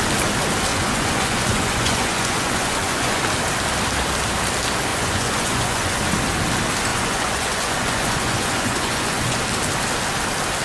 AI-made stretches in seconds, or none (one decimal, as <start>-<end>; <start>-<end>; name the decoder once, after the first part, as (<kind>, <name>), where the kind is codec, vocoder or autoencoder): 0.7-3.2 (vocoder, Vocos); 4.9-6.0; 6.9-9.4